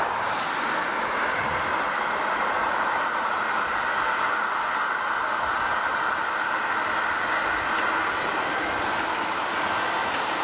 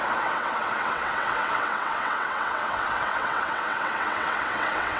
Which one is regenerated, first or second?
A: second